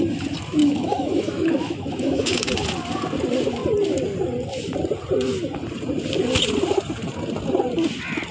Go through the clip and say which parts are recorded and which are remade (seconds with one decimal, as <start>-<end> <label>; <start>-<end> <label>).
0.0-0.6 recorded; 0.6-2.5 remade; 2.5-8.3 recorded